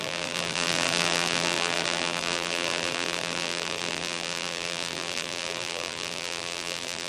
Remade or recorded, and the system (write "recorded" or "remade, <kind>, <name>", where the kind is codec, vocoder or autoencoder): remade, vocoder, BigVGAN v2